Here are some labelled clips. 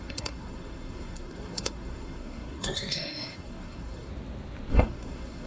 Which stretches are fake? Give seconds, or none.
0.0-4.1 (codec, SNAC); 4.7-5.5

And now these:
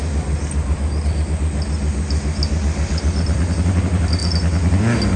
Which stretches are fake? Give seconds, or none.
none

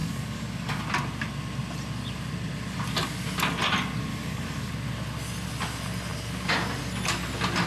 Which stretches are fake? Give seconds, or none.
0.0-0.8 (codec, DAC); 4.1-4.7

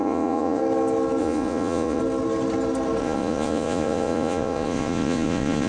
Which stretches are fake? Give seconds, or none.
0.0-0.6 (vocoder, Vocos); 1.2-2.0; 3.0-5.7